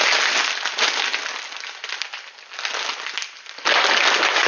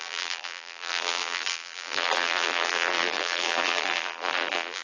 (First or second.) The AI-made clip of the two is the second